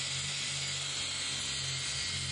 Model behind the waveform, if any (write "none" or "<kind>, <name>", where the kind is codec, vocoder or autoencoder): none